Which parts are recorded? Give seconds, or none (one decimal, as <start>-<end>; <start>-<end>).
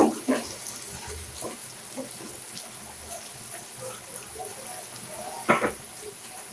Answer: 1.6-3.4; 4.5-5.5